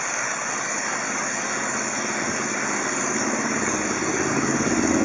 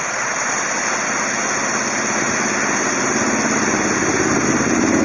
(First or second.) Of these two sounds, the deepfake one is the first